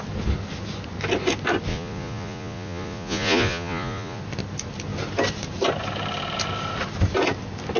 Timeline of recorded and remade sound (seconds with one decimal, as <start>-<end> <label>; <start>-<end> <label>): 0.0-1.7 recorded; 1.7-4.2 remade; 4.2-7.8 recorded